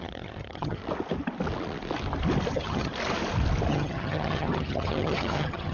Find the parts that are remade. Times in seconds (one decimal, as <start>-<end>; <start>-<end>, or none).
0.0-0.8; 2.5-2.9; 3.7-5.7